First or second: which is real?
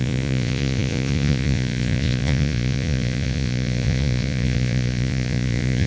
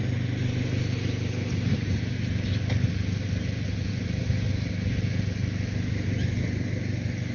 second